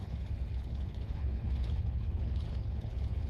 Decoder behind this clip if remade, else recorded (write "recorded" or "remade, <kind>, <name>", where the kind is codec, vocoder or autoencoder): remade, codec, HILCodec